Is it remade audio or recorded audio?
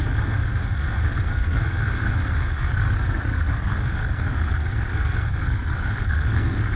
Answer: remade